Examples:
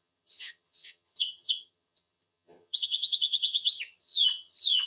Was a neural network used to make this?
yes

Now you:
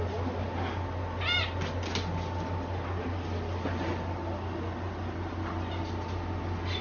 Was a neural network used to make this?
no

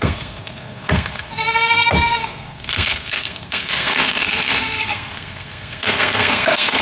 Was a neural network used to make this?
yes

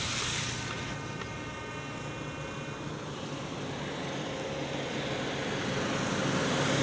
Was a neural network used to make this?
no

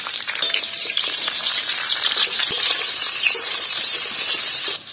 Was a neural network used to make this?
yes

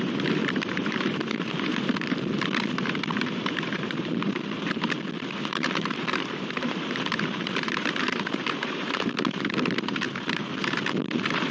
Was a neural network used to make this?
yes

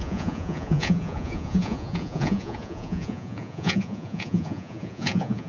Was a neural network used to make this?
yes